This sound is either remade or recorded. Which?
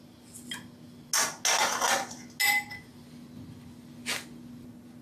recorded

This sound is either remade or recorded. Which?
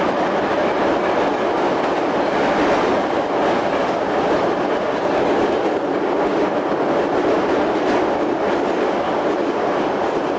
recorded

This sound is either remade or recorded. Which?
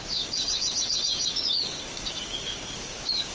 remade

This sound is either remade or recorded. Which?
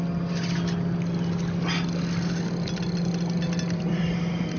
recorded